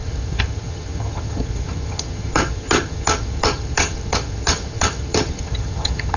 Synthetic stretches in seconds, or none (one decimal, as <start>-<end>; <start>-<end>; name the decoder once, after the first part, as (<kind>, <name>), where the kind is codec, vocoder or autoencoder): 0.0-6.2 (vocoder, HiFi-GAN)